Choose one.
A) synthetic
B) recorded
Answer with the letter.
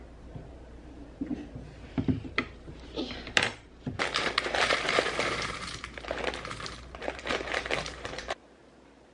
A